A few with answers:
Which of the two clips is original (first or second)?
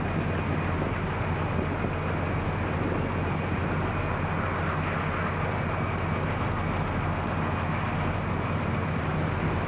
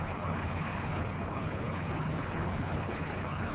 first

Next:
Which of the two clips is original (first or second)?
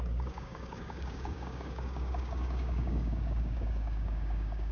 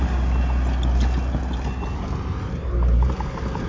second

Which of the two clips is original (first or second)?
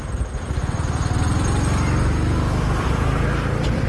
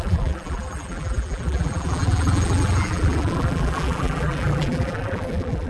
first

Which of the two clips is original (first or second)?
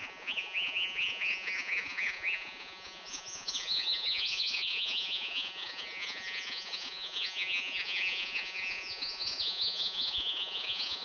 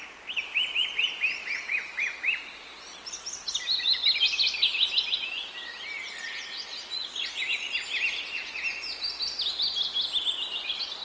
second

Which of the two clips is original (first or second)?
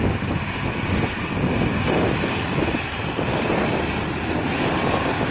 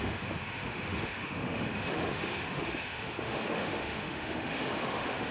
first